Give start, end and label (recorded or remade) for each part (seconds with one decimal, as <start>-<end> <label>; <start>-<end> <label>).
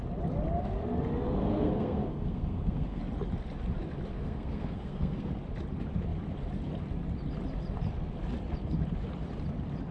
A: 0.0-1.4 recorded; 1.4-3.0 remade; 3.0-4.1 recorded; 4.1-5.3 remade; 5.3-9.9 recorded